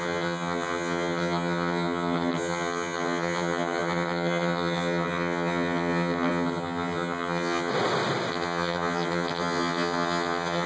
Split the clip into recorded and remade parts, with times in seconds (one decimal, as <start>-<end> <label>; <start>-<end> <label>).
0.0-7.7 remade; 7.7-8.3 recorded; 8.3-10.7 remade